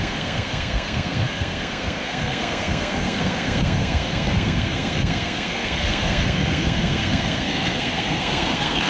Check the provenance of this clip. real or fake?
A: fake